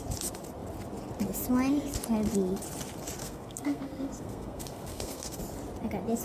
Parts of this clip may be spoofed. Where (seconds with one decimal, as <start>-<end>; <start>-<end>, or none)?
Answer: 3.2-5.4

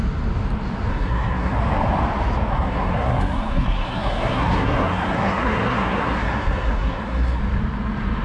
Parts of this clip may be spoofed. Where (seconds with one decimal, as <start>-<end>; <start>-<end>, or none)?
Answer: 0.9-1.6; 2.5-7.4

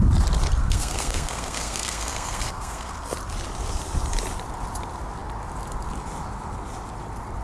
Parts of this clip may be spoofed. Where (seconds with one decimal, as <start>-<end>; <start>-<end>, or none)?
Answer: 0.6-2.9

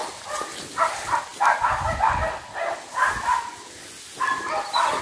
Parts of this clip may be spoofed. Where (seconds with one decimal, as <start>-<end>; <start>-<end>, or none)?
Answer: none

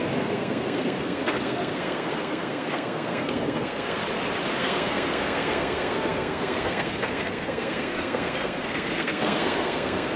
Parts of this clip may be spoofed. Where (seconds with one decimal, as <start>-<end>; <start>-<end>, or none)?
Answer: 0.0-4.0; 4.6-10.2

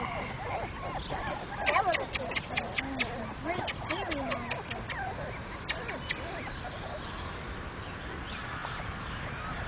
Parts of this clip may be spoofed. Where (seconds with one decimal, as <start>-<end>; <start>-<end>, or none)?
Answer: none

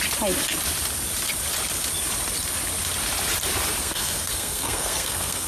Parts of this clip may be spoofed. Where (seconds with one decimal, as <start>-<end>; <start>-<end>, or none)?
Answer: 3.8-5.5

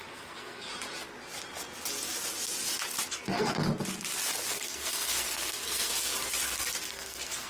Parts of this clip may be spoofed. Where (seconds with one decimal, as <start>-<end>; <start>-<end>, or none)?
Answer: 0.0-0.7; 3.1-3.6; 4.5-5.9; 6.9-7.5